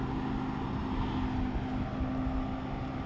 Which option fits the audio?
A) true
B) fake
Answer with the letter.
A